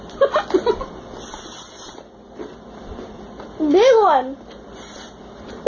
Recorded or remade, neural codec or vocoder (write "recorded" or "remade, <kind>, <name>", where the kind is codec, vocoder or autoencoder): recorded